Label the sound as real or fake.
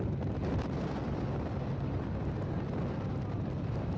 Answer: real